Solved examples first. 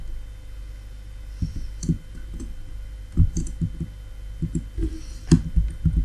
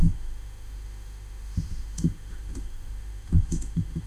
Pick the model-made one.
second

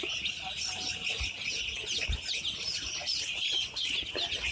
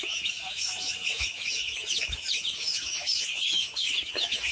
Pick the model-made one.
second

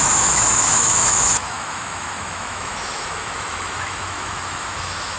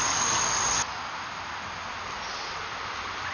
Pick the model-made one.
first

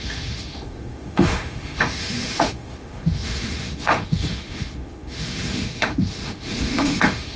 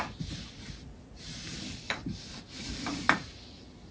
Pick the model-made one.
first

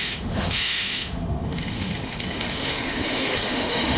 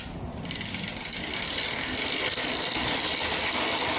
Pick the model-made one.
first